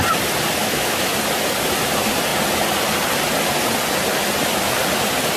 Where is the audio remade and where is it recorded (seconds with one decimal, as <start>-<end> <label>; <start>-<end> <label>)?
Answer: 0.0-0.6 recorded; 0.6-1.1 remade; 1.1-5.4 recorded